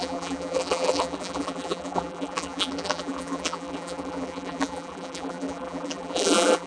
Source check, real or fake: fake